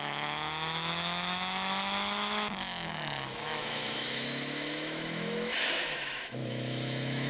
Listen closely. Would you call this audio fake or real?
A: fake